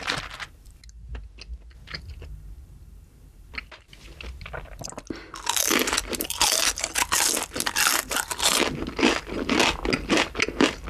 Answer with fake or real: real